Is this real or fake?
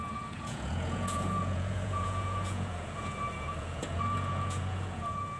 fake